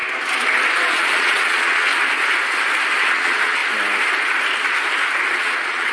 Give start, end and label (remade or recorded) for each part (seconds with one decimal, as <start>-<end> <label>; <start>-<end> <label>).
0.0-0.9 recorded; 0.9-1.9 remade; 1.9-3.0 recorded; 3.0-3.6 remade; 3.6-5.4 recorded; 5.4-5.9 remade